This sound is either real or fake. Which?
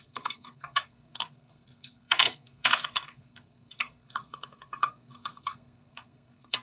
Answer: fake